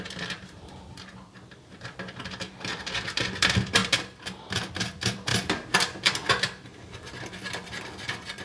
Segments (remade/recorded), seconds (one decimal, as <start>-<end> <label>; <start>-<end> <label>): 0.0-3.8 remade; 3.8-4.7 recorded; 4.7-5.3 remade; 5.3-6.3 recorded; 6.3-6.7 remade; 6.7-7.3 recorded; 7.3-8.4 remade